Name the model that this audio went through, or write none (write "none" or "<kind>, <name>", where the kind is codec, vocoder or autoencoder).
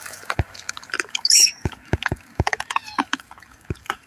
codec, DAC